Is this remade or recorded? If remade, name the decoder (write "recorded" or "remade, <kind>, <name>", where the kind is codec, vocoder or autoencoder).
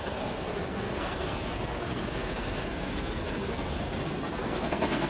remade, codec, SNAC